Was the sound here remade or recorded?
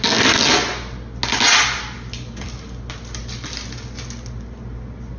recorded